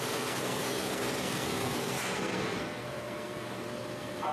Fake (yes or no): yes